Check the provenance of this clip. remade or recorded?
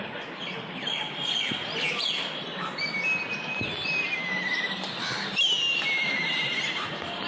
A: recorded